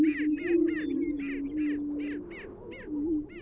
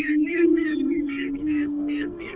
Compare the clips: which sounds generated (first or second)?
second